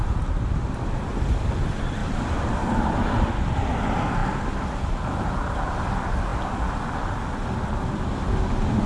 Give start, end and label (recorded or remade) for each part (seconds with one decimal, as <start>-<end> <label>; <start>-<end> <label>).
0.0-2.0 recorded; 2.0-3.3 remade; 3.3-8.9 recorded